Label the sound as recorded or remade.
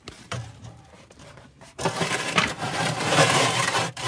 remade